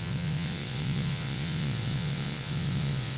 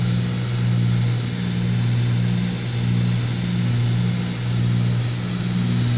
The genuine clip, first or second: second